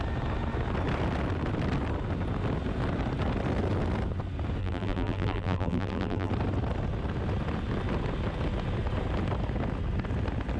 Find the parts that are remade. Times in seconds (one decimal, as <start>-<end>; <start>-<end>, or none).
4.6-6.3